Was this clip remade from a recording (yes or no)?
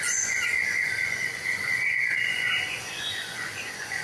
yes